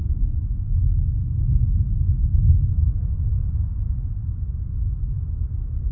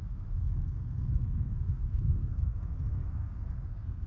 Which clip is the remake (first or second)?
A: second